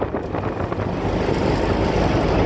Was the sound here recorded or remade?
recorded